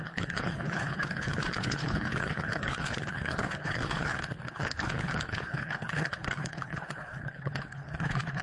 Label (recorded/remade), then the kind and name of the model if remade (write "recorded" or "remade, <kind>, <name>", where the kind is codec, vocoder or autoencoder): remade, codec, HILCodec